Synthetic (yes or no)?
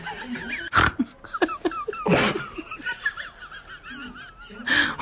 no